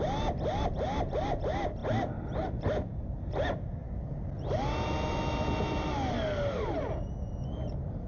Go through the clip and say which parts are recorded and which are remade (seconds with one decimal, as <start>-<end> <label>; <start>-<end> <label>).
0.0-8.1 recorded